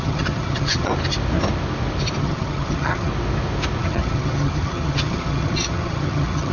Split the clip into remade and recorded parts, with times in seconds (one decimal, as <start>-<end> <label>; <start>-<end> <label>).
0.0-0.9 remade; 0.9-2.2 recorded; 2.2-3.1 remade; 3.1-3.8 recorded; 3.8-6.5 remade